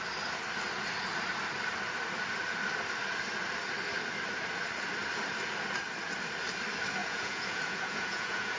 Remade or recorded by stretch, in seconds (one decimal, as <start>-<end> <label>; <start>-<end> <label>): 0.0-7.0 recorded; 7.0-8.6 remade